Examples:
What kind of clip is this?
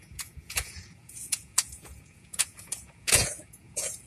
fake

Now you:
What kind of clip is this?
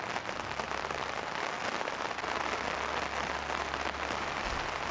real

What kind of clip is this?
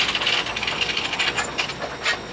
real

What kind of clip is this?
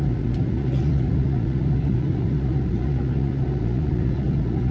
fake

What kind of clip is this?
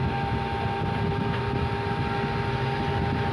real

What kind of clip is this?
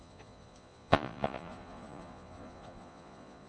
fake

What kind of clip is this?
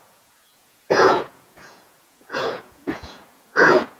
fake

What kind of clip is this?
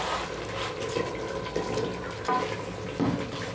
real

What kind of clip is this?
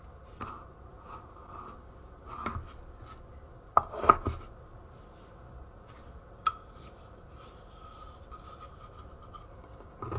real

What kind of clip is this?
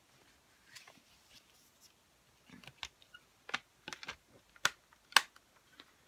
real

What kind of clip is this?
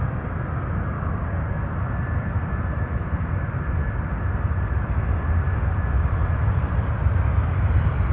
real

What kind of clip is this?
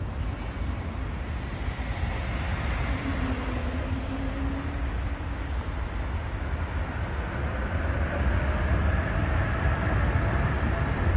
real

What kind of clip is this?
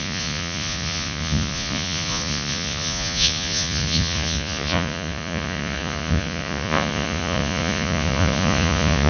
fake